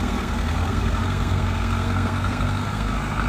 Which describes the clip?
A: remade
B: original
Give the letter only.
A